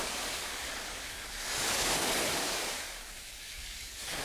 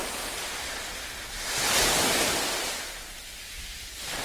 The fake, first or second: first